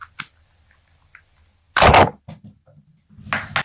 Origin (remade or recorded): recorded